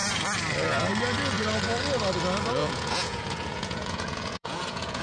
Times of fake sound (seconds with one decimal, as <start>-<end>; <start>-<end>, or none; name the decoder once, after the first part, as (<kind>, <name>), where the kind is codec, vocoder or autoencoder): 2.6-5.0 (vocoder, Vocos)